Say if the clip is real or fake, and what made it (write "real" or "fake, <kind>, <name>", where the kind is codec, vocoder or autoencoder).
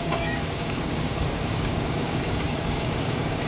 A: fake, codec, DAC